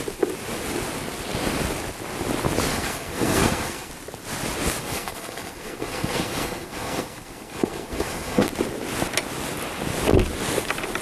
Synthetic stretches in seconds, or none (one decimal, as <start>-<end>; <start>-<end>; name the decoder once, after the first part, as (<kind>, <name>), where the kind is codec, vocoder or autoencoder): 2.7-3.9 (codec, SNAC); 4.8-8.5